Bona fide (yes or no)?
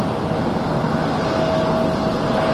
yes